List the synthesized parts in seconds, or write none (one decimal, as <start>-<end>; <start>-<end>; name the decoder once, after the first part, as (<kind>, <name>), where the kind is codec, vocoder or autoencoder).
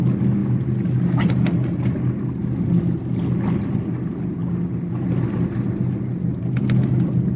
none